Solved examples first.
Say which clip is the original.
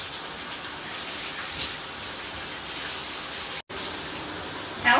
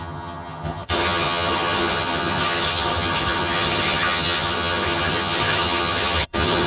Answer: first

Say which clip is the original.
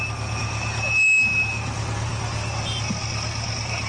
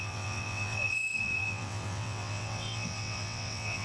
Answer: first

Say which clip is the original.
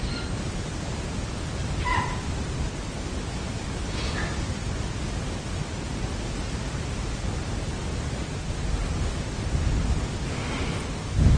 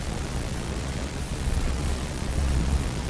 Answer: first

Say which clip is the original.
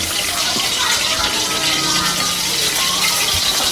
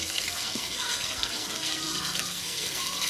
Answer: first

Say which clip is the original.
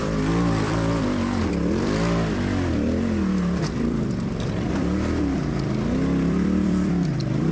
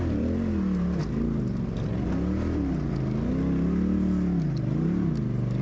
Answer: second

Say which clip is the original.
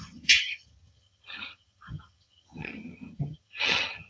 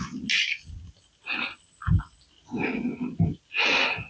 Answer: second